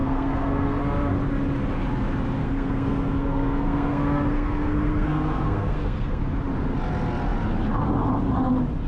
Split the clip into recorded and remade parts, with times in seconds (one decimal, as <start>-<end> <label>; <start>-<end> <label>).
0.0-0.8 remade; 0.8-2.4 recorded; 2.4-6.2 remade; 6.2-8.9 recorded